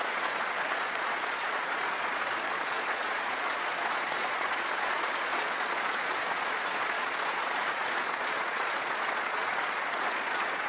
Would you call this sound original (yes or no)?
no